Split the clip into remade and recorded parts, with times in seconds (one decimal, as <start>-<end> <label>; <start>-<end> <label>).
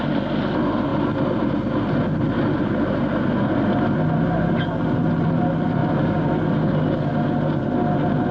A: 0.0-8.3 recorded